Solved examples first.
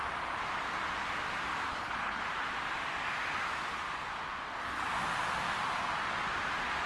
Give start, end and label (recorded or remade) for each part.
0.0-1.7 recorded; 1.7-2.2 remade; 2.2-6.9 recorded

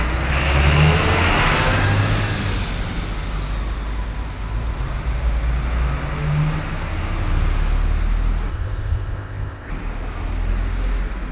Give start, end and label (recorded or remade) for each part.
0.0-8.5 recorded; 8.5-9.7 remade; 9.7-11.3 recorded

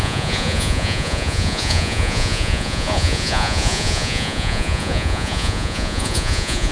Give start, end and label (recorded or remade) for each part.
0.0-6.7 remade

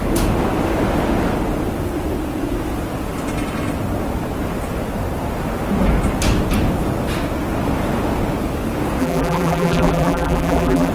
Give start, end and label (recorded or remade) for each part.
0.0-9.0 recorded; 9.0-10.9 remade

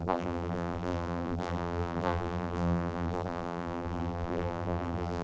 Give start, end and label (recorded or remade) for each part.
0.0-5.2 remade